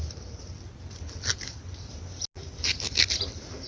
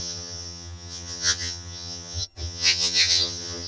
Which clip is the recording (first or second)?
first